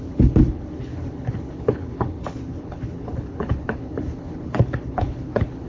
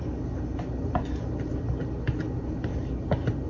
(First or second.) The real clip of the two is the second